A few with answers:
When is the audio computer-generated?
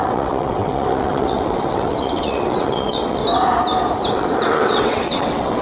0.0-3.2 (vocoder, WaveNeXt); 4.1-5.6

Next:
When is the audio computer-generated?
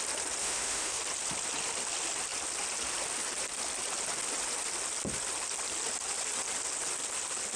0.4-1.0 (autoencoder, DAC-VAE)